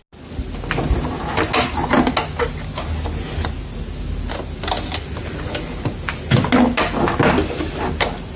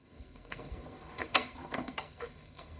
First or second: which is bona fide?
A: first